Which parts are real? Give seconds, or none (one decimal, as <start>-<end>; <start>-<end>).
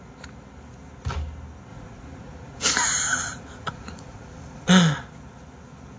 0.0-1.7; 4.7-6.0